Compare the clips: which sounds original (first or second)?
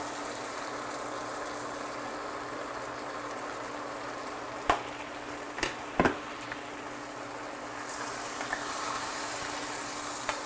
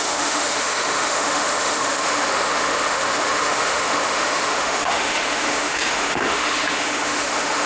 first